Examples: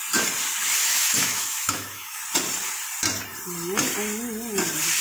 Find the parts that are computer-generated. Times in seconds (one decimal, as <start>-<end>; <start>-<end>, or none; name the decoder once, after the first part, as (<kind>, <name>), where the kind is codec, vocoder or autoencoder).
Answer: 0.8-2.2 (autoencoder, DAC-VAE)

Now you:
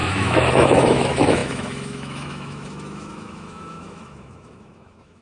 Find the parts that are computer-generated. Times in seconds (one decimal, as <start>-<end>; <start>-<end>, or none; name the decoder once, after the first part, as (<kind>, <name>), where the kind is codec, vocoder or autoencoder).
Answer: 0.0-5.2 (autoencoder, DAC-VAE)

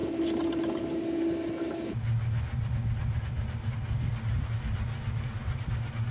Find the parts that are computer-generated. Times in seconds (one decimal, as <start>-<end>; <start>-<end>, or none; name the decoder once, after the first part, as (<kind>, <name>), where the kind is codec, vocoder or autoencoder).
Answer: none